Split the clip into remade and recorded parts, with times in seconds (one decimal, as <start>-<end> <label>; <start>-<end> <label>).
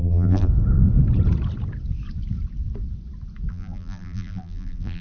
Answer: 0.0-0.5 remade; 0.5-3.5 recorded; 3.5-5.0 remade